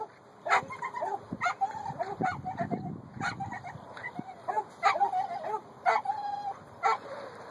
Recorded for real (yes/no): yes